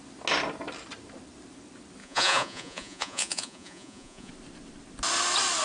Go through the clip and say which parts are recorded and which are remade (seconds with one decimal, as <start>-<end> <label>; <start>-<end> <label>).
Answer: 0.0-2.0 recorded; 2.0-4.3 remade; 4.3-5.6 recorded